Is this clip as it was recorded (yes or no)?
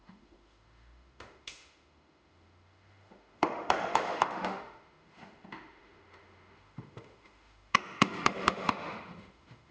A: no